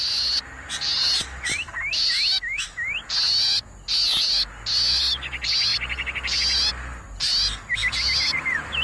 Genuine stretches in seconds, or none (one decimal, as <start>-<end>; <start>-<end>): 0.0-8.8